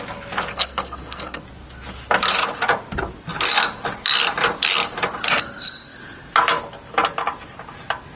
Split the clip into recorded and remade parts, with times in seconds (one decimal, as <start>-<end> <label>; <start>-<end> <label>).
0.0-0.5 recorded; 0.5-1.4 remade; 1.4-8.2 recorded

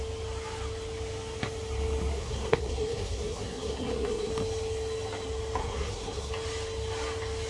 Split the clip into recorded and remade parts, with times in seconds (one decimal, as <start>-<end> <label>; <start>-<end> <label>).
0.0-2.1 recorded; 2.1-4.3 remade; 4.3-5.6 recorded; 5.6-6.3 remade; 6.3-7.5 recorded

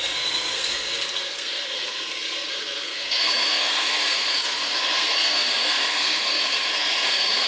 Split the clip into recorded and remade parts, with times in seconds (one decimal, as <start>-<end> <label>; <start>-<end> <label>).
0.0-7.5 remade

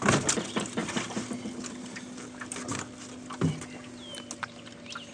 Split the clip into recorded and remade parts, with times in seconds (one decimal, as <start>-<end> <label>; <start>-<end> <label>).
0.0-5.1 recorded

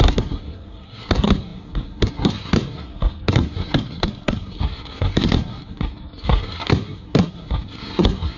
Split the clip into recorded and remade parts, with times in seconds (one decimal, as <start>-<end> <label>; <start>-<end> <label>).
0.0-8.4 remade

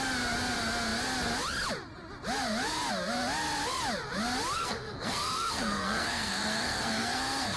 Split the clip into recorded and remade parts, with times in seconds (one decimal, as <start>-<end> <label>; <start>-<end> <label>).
0.0-4.6 recorded; 4.6-7.6 remade

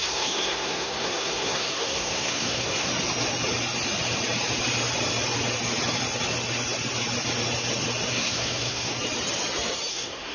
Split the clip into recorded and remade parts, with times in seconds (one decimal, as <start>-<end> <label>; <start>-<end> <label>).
0.0-2.9 remade; 2.9-8.1 recorded; 8.1-8.9 remade; 8.9-9.9 recorded; 9.9-10.3 remade